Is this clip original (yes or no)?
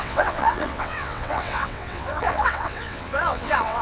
no